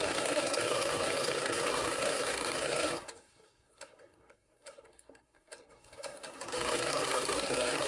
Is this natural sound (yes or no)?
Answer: no